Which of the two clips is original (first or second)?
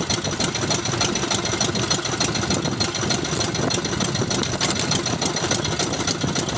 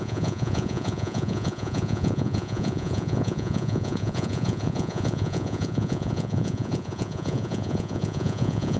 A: first